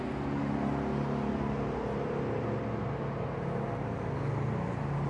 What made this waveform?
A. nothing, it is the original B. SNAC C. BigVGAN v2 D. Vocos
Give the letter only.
A